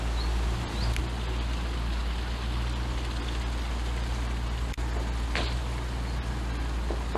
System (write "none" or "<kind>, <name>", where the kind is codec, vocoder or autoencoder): none